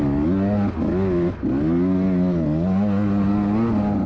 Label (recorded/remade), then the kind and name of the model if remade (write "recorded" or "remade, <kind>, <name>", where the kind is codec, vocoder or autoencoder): recorded